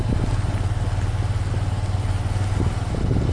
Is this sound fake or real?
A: real